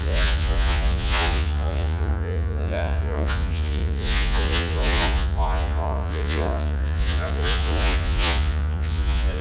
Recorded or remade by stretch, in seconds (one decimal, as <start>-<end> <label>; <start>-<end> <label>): 0.0-9.4 remade